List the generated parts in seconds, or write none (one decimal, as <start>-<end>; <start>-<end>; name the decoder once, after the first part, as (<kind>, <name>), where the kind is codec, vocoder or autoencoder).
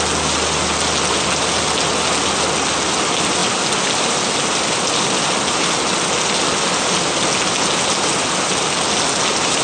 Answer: none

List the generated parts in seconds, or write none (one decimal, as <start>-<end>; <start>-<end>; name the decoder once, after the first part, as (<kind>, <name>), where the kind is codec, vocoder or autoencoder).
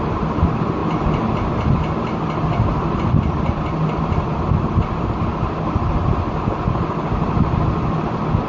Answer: none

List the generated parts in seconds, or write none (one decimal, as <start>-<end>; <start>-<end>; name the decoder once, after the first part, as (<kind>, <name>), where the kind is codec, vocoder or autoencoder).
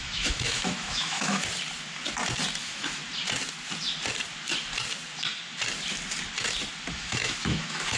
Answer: 0.0-1.4 (autoencoder, DAC-VAE); 2.6-3.0; 6.9-8.0